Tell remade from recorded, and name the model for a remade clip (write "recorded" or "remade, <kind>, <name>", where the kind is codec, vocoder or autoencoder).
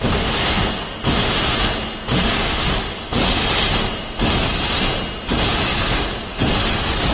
recorded